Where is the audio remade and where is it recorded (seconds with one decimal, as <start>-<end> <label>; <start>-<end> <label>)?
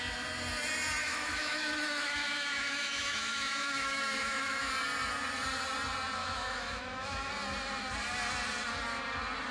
0.0-1.0 recorded; 1.0-4.7 remade; 4.7-6.2 recorded; 6.2-7.3 remade; 7.3-9.5 recorded